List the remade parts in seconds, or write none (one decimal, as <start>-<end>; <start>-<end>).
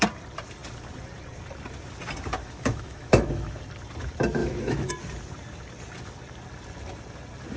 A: 2.4-3.6; 4.4-4.9